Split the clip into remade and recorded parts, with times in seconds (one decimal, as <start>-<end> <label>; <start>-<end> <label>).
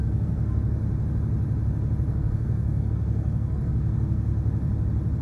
0.0-0.8 remade; 0.8-2.1 recorded; 2.1-4.3 remade; 4.3-5.2 recorded